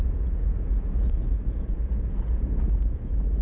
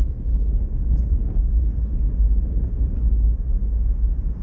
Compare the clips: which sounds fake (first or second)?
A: first